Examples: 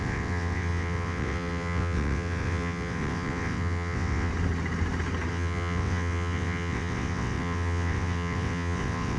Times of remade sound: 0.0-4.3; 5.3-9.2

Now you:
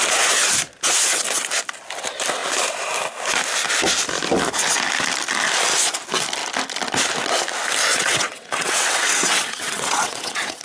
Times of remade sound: 7.9-10.6

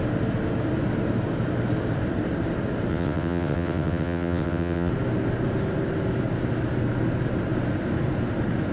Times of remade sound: 2.9-4.9

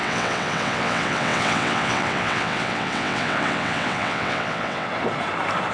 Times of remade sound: 0.0-4.9

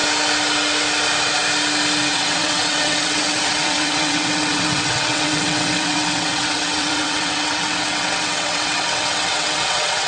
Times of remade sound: 2.1-10.1

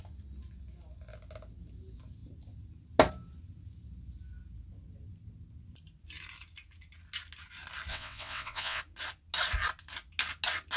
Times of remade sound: 7.9-8.8